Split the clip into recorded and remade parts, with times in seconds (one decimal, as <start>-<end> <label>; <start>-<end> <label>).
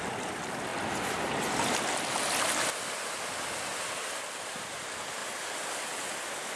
0.0-6.6 recorded